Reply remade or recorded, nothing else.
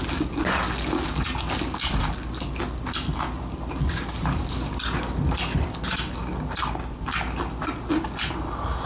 recorded